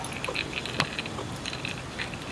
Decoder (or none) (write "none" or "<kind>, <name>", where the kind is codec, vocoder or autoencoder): none